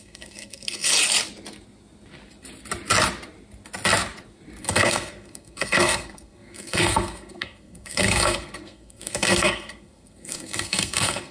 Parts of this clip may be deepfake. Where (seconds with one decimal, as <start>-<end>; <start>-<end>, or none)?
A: 0.0-0.9; 4.6-11.3